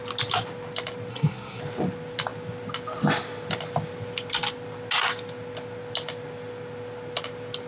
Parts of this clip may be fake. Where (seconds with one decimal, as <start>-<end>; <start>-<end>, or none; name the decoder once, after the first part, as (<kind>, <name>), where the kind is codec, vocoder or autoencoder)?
1.1-1.6 (codec, SNAC)